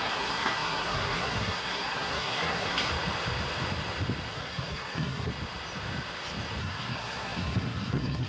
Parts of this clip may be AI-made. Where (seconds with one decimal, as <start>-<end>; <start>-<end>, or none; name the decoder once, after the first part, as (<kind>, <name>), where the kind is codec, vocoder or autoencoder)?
0.0-2.9 (codec, SNAC); 4.3-5.3; 6.6-8.3